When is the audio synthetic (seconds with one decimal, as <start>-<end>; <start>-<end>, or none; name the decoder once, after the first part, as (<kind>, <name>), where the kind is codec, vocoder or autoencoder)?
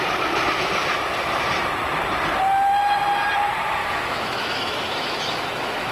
3.8-5.9 (autoencoder, DAC-VAE)